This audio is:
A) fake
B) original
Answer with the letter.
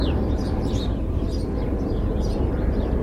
A